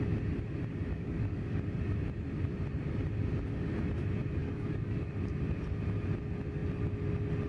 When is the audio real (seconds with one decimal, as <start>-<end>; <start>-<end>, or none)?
0.0-0.9; 1.6-4.4; 5.1-7.5